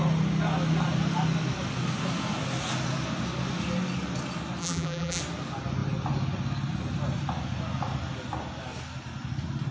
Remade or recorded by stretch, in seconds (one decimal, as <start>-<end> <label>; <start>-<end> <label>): 0.0-4.6 recorded; 4.6-5.2 remade; 5.2-9.7 recorded